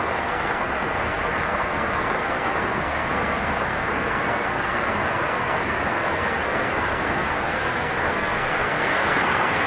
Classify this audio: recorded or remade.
remade